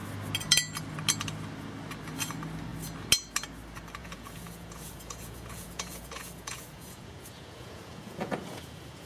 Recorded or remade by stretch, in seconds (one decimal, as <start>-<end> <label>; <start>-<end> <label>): 0.0-4.0 recorded; 4.0-9.1 remade